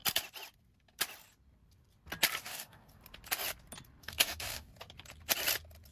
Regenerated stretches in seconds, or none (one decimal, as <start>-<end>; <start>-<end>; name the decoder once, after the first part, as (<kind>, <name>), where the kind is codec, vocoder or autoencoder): 2.4-3.0 (codec, DAC); 4.0-4.7